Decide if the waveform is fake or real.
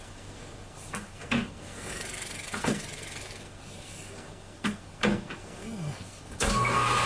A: fake